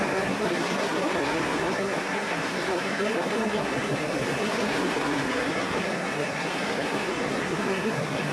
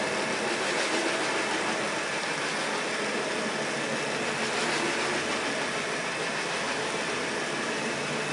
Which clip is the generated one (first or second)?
first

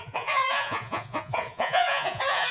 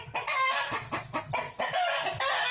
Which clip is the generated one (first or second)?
first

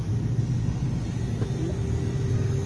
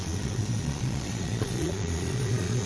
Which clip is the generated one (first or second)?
second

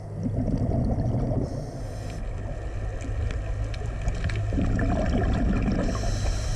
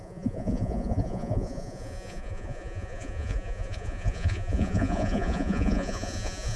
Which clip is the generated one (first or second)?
second